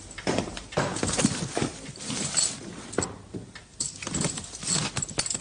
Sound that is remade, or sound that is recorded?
recorded